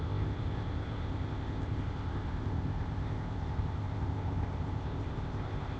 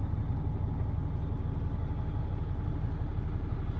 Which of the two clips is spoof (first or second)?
first